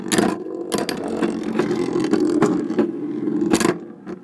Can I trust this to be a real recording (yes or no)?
yes